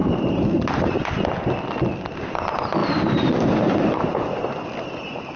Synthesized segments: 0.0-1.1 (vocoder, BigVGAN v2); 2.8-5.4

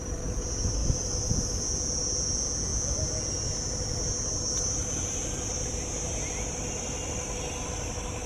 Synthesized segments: 0.8-1.6 (vocoder, BigVGAN v2)

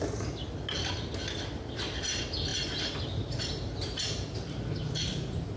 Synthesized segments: none

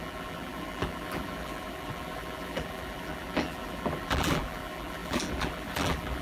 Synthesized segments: 0.0-6.2 (vocoder, BigVGAN v2)

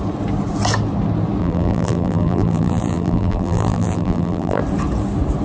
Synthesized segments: 1.4-4.6 (vocoder, BigVGAN v2)